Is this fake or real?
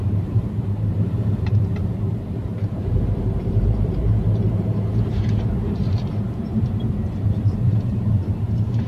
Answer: fake